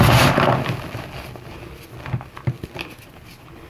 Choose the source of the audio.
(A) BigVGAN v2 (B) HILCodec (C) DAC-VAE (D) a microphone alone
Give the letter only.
D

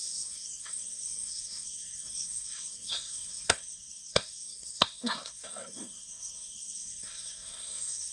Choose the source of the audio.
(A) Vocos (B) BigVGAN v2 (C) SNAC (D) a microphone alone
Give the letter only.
C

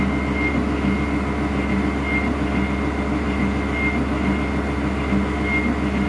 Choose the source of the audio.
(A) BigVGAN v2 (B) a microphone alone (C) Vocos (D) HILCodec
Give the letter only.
B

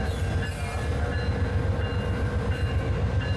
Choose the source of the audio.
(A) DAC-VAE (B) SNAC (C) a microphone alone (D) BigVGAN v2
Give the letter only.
C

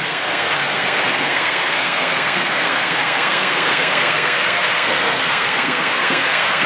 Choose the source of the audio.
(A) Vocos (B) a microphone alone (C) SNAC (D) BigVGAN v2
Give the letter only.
C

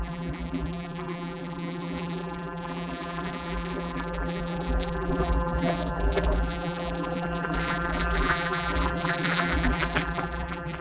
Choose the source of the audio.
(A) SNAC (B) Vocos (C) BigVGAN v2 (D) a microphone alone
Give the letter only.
C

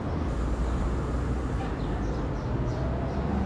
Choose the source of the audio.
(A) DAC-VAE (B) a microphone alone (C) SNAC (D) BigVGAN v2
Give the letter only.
B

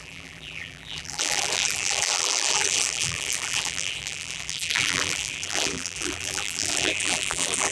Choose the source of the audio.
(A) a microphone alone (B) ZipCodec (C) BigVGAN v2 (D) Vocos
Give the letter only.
C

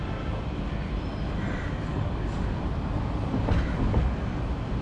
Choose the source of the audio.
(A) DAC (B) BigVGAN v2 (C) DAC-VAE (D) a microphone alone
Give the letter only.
D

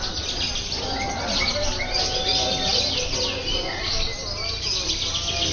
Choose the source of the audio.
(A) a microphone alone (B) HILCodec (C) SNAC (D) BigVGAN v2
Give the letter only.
A